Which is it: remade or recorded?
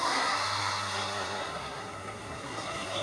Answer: remade